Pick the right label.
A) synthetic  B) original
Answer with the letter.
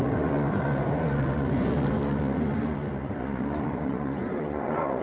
A